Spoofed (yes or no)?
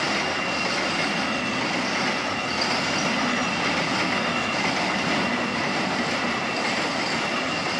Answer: no